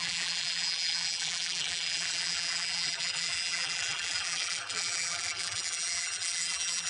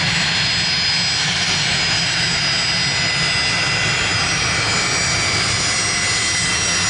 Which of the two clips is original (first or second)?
second